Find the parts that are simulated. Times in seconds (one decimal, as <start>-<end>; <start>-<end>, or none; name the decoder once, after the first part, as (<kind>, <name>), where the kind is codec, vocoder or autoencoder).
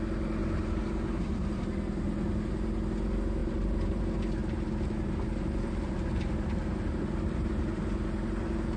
0.4-1.6 (vocoder, BigVGAN v2); 3.4-4.0; 4.4-8.8